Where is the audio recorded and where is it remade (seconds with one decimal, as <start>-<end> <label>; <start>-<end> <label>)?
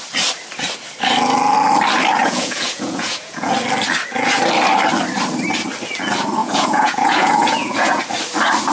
0.0-2.2 recorded; 2.2-3.5 remade; 3.5-6.4 recorded; 6.4-8.0 remade; 8.0-8.7 recorded